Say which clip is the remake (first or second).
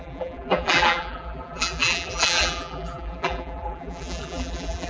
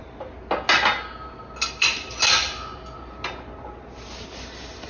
first